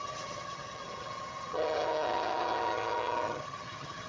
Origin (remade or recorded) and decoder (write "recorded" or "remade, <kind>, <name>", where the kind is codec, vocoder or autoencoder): remade, vocoder, HiFi-GAN